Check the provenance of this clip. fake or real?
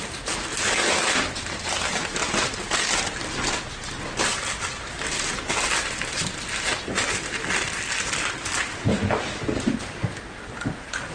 real